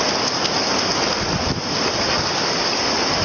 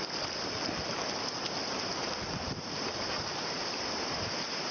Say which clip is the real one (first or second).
first